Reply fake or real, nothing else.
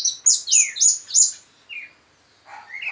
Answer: real